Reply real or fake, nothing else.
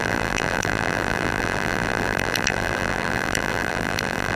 fake